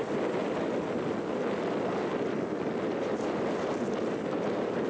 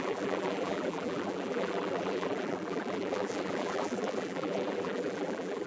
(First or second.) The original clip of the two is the first